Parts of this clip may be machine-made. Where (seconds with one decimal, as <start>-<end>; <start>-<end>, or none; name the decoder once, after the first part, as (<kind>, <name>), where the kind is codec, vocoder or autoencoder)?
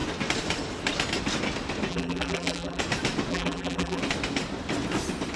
1.9-2.8 (vocoder, BigVGAN v2); 3.3-4.0